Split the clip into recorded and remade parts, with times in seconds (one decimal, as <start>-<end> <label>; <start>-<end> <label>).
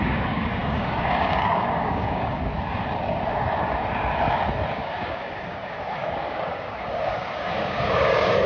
0.0-2.5 remade; 2.5-4.7 recorded; 4.7-8.5 remade